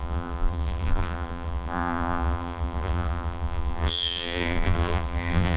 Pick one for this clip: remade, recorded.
remade